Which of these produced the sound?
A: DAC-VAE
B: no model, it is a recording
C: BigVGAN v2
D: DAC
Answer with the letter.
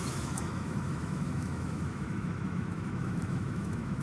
A